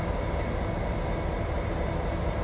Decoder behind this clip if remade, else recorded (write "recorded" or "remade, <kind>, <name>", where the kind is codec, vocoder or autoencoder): recorded